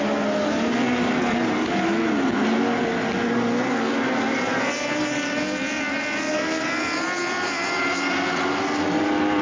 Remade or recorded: recorded